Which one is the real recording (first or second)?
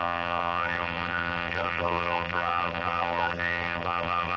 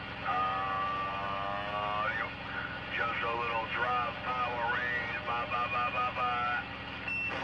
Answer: second